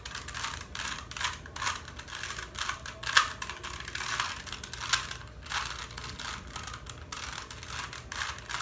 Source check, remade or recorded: recorded